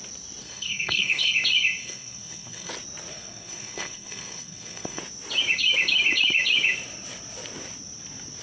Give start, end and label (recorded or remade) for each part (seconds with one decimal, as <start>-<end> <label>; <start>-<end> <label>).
0.0-0.4 recorded; 0.4-1.3 remade; 1.3-1.8 recorded; 1.8-2.7 remade; 2.7-3.1 recorded; 3.1-5.0 remade; 5.0-8.4 recorded